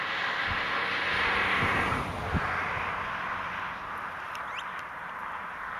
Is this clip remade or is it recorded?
recorded